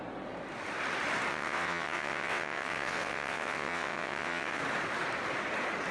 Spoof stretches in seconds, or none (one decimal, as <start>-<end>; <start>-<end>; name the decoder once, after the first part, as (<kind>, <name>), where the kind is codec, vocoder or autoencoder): 1.3-4.6 (vocoder, WaveNeXt)

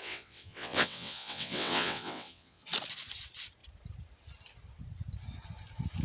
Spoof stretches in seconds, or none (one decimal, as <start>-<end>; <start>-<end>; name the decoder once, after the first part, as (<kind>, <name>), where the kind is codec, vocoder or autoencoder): 0.0-2.6 (vocoder, WaveNeXt)